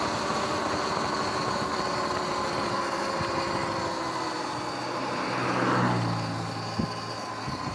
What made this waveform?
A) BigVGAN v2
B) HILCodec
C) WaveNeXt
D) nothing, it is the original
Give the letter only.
D